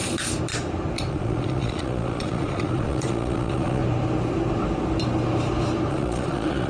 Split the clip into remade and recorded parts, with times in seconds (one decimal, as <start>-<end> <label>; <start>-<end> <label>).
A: 0.0-1.1 recorded; 1.1-3.8 remade; 3.8-5.9 recorded; 5.9-6.7 remade